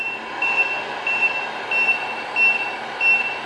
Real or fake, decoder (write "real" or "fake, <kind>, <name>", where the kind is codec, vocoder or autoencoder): real